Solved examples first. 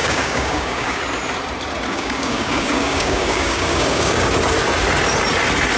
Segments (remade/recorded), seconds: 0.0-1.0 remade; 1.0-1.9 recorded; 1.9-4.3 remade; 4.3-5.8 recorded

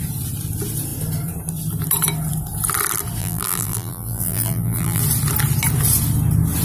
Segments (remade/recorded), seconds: 0.0-3.2 recorded; 3.2-5.0 remade; 5.0-6.6 recorded